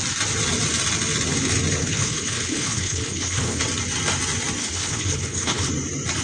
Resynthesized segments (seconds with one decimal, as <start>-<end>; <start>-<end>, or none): 1.8-3.6; 4.6-5.7